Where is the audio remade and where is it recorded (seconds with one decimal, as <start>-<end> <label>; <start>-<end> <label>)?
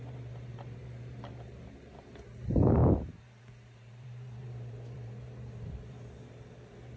0.0-2.8 remade; 2.8-3.4 recorded; 3.4-7.0 remade